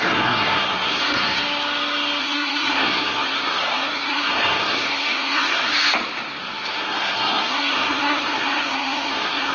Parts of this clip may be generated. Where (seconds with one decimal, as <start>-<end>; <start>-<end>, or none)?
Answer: 0.0-1.4; 2.2-5.7; 6.4-9.5